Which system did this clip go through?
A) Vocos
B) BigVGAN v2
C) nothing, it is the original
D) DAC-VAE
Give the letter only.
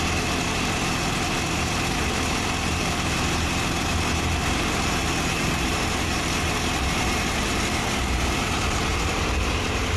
B